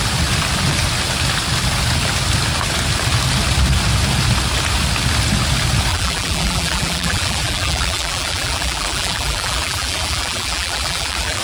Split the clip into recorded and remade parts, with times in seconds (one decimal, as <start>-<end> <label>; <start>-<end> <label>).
0.0-5.9 recorded; 5.9-11.4 remade